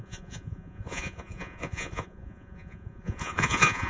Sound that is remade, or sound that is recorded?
remade